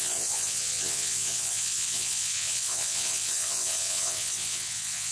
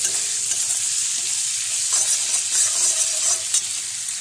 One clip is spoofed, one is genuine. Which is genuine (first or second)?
second